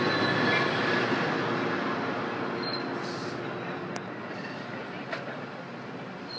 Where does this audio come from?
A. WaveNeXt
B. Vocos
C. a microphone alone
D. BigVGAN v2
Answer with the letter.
C